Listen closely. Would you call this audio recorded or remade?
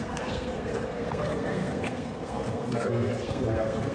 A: remade